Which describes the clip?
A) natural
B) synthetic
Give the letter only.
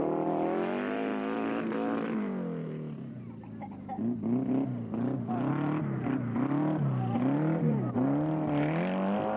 A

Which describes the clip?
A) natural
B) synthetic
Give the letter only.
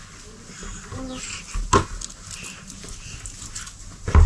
A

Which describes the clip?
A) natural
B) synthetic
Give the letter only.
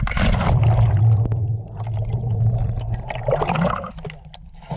A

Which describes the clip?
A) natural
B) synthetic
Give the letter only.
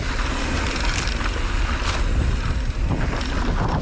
A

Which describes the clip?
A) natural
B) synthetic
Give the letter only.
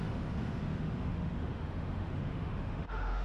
B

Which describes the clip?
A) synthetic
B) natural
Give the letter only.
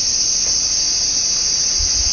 B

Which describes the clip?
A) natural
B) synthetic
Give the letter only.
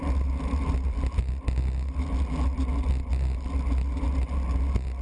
A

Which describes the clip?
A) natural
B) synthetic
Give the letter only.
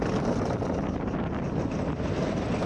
B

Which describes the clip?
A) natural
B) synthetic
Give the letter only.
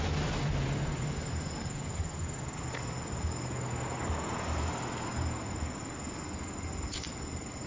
A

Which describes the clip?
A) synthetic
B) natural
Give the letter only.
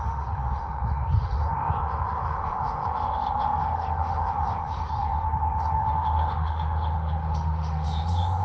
A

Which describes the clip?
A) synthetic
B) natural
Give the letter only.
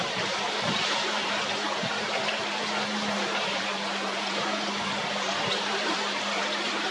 A